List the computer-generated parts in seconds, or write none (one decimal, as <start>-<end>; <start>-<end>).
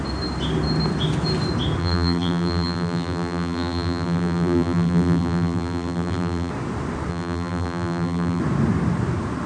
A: 1.8-6.5; 7.1-8.4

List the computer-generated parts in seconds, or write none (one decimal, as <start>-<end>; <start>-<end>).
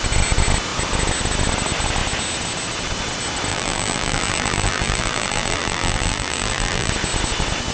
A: 3.5-6.9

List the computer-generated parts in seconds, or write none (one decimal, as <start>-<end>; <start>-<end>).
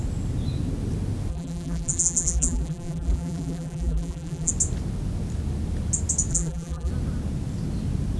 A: 1.3-4.5; 6.3-6.9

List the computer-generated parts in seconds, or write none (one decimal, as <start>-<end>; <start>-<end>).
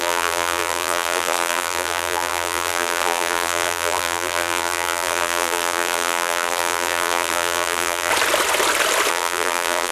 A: 0.0-8.1; 9.1-9.9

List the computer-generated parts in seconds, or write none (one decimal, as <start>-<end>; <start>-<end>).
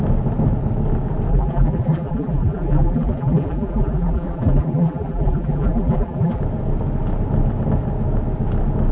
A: 1.3-6.4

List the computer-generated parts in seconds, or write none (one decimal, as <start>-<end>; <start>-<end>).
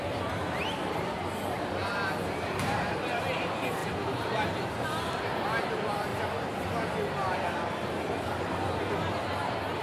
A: 1.8-3.2; 3.8-5.2